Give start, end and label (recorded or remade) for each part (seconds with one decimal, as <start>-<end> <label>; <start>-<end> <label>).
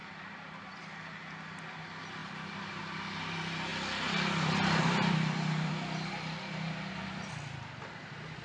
0.0-0.8 remade; 0.8-2.2 recorded; 2.2-2.8 remade; 2.8-3.7 recorded; 3.7-5.7 remade; 5.7-8.4 recorded